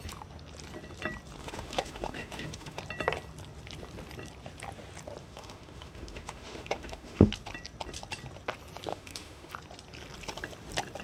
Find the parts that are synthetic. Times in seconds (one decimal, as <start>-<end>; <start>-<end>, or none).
1.4-2.8; 5.2-7.3; 8.9-9.5